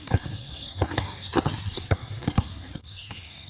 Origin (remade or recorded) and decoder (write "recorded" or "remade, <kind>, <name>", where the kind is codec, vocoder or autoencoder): remade, codec, SNAC